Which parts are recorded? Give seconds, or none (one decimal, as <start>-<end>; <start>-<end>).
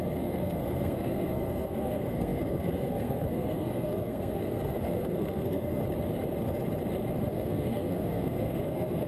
5.8-7.3